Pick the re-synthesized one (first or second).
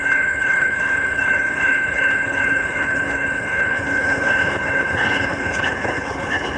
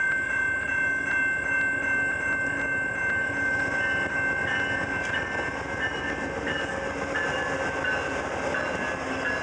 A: first